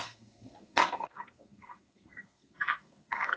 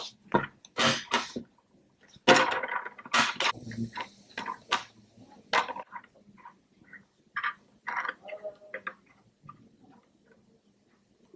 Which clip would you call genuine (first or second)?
second